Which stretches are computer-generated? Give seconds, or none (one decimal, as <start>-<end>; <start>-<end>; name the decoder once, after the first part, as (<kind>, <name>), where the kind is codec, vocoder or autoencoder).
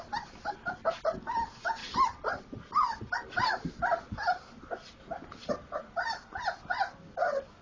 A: none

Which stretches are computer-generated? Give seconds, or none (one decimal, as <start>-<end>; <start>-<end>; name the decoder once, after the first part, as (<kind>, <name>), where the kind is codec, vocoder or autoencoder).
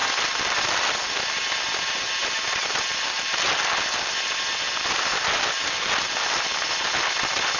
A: none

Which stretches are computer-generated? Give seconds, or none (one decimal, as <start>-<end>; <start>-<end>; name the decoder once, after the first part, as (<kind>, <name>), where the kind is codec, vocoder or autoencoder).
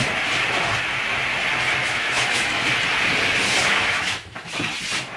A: 1.8-2.6 (autoencoder, DAC-VAE); 3.6-4.5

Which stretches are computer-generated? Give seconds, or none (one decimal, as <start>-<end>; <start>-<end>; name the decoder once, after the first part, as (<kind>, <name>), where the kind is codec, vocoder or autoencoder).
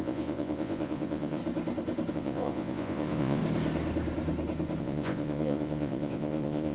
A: 0.0-1.4 (vocoder, Vocos); 2.1-3.4; 4.8-6.7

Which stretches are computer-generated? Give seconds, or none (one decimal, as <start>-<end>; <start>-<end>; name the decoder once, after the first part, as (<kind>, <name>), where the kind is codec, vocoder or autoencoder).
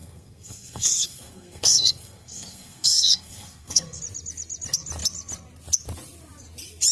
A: 0.0-4.0 (codec, SNAC)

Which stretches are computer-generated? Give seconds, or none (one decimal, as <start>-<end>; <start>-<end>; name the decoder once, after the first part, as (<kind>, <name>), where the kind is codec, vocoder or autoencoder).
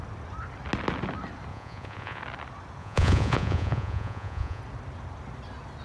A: 1.5-2.2 (vocoder, Vocos); 2.8-4.6